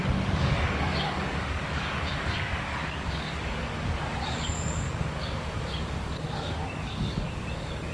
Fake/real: fake